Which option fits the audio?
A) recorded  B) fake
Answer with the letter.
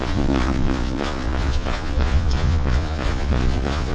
B